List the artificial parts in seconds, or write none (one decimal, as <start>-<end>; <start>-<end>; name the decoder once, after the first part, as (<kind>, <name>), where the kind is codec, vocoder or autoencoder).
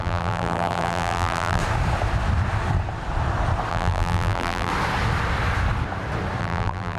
0.0-1.6 (vocoder, BigVGAN v2); 3.7-4.7; 6.4-7.0